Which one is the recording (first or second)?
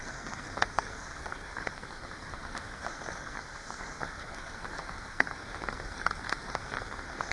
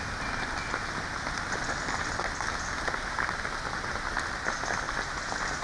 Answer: second